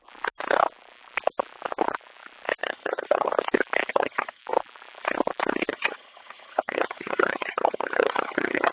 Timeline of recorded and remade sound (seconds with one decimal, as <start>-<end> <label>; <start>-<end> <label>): 0.0-2.6 recorded; 2.6-3.3 remade; 3.3-3.9 recorded; 3.9-4.4 remade; 4.4-5.7 recorded; 5.7-8.7 remade